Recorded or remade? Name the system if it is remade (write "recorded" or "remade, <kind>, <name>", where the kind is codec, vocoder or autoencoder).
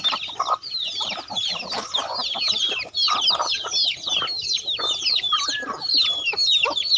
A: recorded